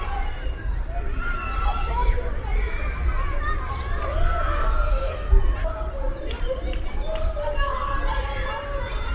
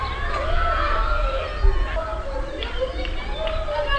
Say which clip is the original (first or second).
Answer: second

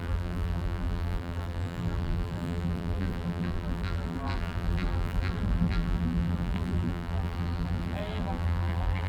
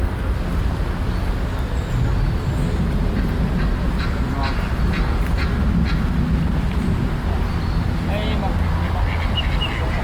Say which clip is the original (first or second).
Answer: second